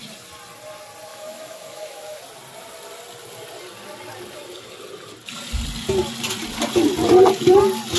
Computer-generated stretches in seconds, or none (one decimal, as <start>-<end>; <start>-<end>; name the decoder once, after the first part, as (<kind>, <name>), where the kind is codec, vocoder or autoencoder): 1.1-2.2 (autoencoder, DAC-VAE)